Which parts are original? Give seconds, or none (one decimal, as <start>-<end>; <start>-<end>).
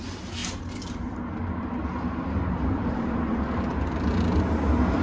0.0-0.4; 3.4-5.0